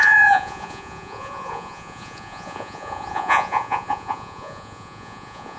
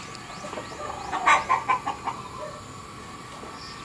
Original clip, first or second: second